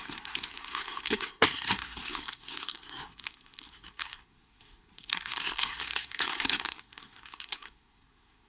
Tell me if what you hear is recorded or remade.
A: remade